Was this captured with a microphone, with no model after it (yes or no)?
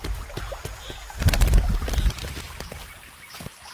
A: yes